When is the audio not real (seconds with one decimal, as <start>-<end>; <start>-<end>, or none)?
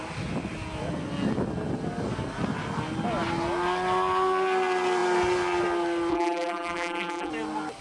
6.1-7.3